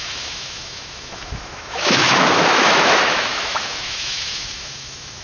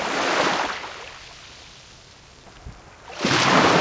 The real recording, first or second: second